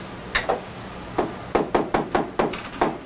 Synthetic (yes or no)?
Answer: no